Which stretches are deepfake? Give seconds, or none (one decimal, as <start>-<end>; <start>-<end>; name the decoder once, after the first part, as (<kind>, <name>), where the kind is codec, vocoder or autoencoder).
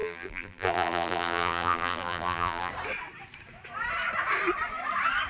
0.0-2.7 (vocoder, BigVGAN v2)